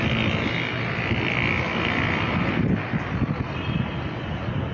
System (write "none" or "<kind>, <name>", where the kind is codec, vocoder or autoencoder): none